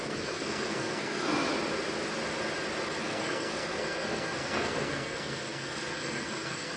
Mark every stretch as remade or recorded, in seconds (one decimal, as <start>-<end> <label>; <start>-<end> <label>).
0.0-1.3 remade; 1.3-3.0 recorded; 3.0-6.8 remade

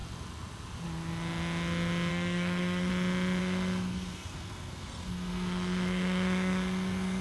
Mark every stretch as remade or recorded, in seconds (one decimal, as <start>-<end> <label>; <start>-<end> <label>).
0.0-2.1 recorded; 2.1-2.9 remade; 2.9-3.4 recorded; 3.4-7.2 remade

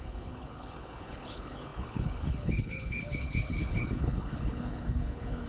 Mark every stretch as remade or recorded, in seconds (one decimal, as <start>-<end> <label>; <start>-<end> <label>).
0.0-5.5 remade

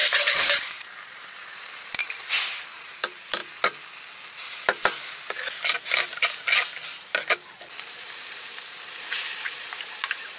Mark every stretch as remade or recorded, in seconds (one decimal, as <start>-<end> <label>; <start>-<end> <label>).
0.0-2.0 remade; 2.0-2.7 recorded; 2.7-3.4 remade; 3.4-8.0 recorded; 8.0-10.4 remade

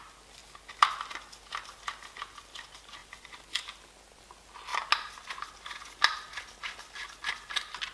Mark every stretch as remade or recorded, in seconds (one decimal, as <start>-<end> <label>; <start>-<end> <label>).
0.0-7.9 recorded

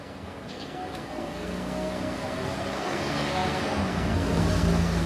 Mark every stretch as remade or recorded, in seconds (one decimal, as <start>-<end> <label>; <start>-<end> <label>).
0.0-5.1 remade

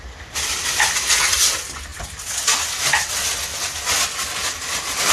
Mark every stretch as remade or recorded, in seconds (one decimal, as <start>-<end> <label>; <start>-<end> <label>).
0.0-5.1 recorded

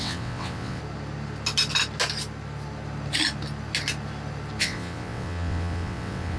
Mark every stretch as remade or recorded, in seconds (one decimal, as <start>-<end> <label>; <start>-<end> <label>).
0.0-0.8 remade; 0.8-4.6 recorded; 4.6-6.4 remade